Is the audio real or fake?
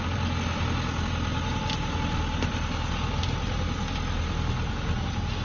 real